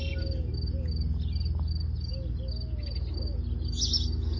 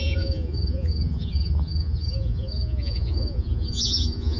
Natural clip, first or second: first